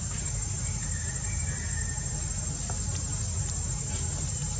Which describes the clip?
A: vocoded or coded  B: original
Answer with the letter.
B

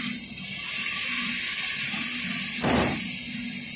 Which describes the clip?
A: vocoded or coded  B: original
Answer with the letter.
B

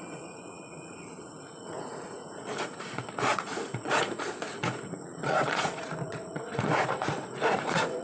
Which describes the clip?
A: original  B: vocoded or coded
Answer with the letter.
B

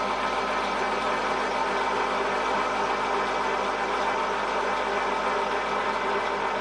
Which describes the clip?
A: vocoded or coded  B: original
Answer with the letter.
B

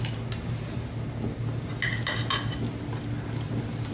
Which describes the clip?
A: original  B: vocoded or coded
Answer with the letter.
A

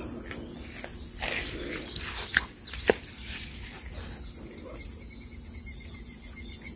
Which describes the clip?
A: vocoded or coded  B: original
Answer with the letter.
B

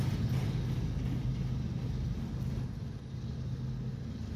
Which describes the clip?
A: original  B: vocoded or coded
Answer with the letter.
A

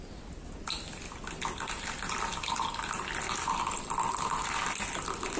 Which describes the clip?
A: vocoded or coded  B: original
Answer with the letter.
B